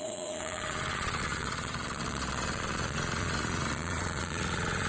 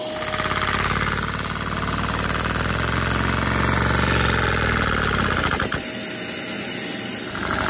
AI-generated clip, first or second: first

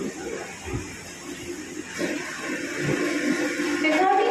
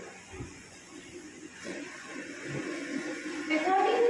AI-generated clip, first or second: second